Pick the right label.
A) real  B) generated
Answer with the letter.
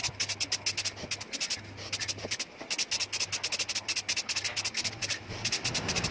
A